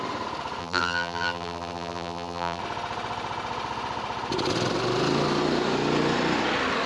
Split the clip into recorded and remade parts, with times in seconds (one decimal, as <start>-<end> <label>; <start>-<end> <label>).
0.0-0.6 recorded; 0.6-2.6 remade; 2.6-6.9 recorded